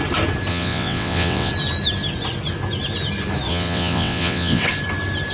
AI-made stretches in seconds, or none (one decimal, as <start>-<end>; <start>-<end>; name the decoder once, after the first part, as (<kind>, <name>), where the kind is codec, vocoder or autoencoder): 0.5-1.5 (vocoder, WaveNeXt); 3.5-4.6